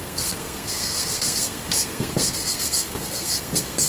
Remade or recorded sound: remade